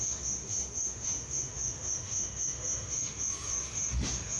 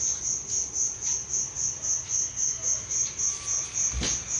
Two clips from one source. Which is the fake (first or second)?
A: first